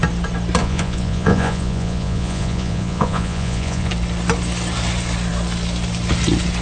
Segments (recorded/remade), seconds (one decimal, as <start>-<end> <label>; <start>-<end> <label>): 0.0-0.6 recorded; 0.6-3.9 remade; 3.9-6.6 recorded